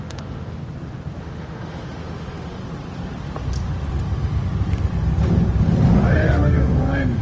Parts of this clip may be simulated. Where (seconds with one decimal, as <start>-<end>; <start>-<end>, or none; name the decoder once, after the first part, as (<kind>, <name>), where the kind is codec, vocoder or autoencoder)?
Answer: 0.0-0.6 (autoencoder, DAC-VAE); 1.2-2.6; 6.0-7.2